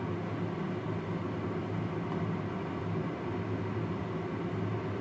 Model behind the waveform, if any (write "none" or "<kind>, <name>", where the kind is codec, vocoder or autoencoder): none